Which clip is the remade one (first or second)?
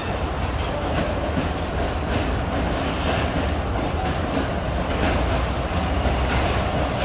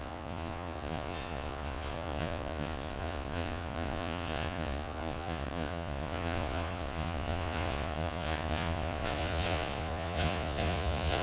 second